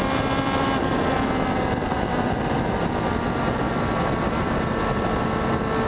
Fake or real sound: real